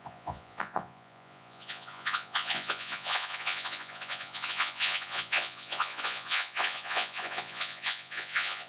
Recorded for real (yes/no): no